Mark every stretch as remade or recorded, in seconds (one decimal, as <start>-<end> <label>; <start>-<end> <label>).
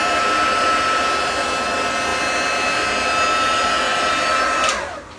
0.0-5.2 recorded